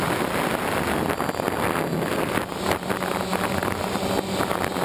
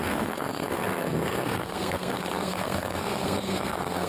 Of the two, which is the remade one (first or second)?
second